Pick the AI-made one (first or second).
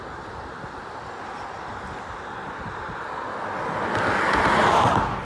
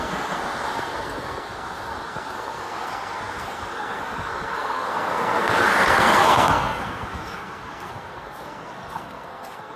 second